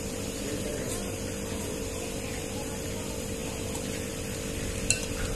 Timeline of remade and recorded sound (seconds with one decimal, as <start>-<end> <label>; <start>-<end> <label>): 0.0-5.3 recorded

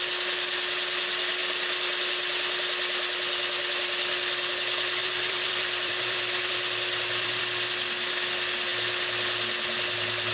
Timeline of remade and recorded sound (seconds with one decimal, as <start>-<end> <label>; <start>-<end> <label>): 0.0-5.0 recorded; 5.0-7.4 remade; 7.4-10.3 recorded

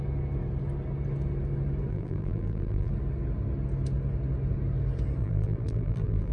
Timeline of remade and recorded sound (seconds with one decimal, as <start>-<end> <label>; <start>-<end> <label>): 0.0-1.9 recorded; 1.9-2.9 remade; 2.9-5.2 recorded; 5.2-6.3 remade

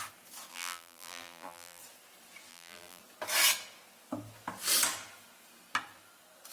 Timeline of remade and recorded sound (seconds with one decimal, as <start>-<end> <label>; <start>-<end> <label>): 0.0-0.5 recorded; 0.5-1.8 remade; 1.8-2.5 recorded; 2.5-3.0 remade; 3.0-6.5 recorded

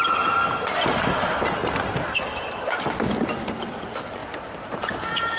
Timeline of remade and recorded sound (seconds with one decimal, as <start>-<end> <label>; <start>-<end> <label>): 0.0-1.6 recorded; 1.6-2.9 remade; 2.9-4.2 recorded; 4.2-4.8 remade; 4.8-5.4 recorded

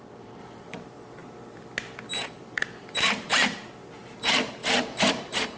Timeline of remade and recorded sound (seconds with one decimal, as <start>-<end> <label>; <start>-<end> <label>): 0.0-1.2 remade; 1.2-2.1 recorded; 2.1-5.6 remade

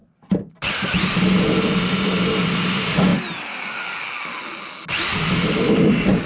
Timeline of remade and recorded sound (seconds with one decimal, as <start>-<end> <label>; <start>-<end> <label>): 0.0-1.4 remade; 1.4-6.3 recorded